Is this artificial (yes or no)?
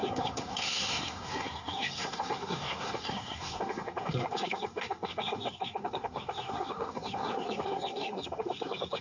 yes